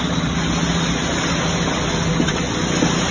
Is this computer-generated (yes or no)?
no